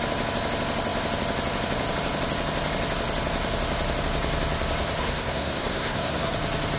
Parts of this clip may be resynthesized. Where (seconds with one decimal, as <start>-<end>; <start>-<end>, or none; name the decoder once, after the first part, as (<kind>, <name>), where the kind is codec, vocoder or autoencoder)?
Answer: 5.0-6.3 (codec, SNAC)